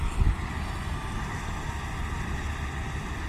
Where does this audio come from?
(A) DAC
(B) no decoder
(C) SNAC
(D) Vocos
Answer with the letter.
B